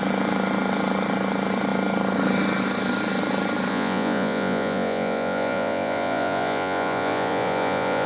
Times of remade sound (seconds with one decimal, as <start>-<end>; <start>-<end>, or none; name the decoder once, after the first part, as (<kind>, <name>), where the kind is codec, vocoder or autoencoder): 3.7-8.1 (vocoder, Vocos)